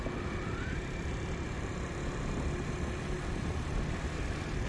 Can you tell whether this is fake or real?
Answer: real